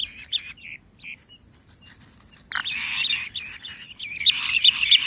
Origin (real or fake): fake